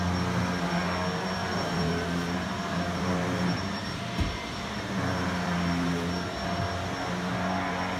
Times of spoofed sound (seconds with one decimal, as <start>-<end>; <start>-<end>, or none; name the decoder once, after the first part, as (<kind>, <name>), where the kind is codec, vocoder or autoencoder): 1.4-5.9 (vocoder, BigVGAN v2)